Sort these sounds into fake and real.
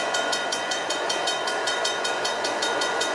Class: fake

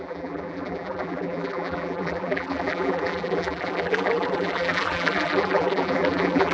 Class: fake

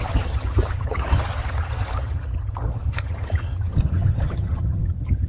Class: fake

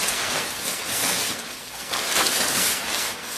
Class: fake